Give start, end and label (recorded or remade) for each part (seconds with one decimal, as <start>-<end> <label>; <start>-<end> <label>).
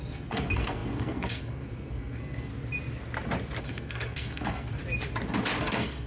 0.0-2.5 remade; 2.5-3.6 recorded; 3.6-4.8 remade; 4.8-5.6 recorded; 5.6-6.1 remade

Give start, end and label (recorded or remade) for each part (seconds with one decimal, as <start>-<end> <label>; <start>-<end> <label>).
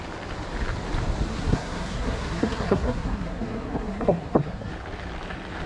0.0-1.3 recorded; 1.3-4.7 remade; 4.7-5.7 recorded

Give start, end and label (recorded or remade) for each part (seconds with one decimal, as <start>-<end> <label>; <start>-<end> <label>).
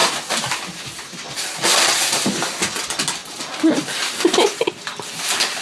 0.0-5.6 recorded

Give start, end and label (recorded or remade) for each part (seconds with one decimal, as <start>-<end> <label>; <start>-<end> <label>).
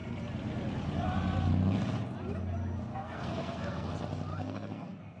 0.0-2.9 recorded; 2.9-3.9 remade; 3.9-4.3 recorded; 4.3-5.2 remade